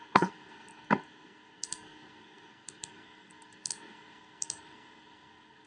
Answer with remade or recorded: remade